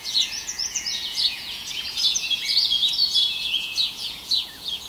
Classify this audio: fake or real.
fake